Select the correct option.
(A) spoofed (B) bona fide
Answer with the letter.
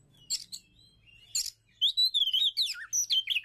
B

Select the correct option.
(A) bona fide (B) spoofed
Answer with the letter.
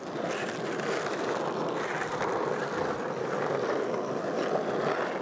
A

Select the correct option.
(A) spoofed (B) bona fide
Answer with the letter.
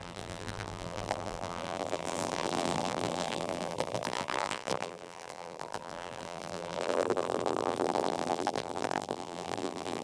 A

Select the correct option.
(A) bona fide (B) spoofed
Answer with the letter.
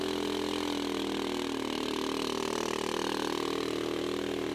A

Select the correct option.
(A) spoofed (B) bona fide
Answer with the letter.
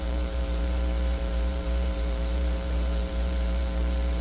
A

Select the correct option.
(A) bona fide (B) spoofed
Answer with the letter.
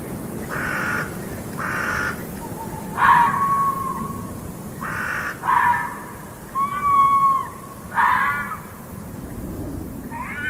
A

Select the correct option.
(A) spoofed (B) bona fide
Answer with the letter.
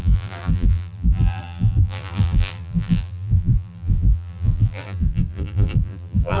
A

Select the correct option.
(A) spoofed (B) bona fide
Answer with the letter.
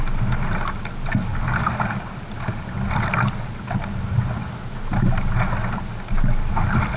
B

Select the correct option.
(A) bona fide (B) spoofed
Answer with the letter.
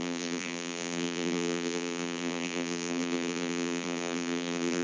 B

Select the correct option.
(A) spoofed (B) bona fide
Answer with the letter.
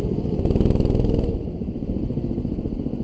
B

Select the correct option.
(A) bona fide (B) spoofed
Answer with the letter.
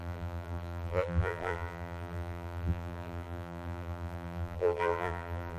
B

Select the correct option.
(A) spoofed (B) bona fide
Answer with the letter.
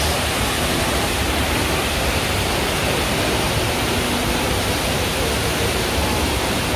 A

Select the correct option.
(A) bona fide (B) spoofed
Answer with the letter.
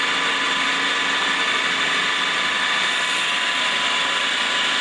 A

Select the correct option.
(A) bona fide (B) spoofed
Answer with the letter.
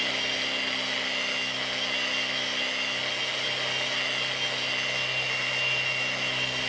A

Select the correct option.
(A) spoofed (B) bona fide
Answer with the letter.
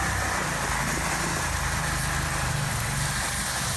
B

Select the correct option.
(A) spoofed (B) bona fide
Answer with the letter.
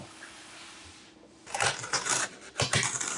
A